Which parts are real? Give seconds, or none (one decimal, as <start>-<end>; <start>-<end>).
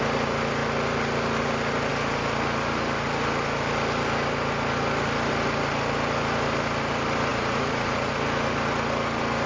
0.0-7.3; 8.1-9.5